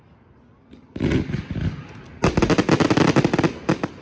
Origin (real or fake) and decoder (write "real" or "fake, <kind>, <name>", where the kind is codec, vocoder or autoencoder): real